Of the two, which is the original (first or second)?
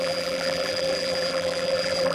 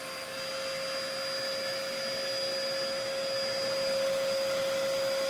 second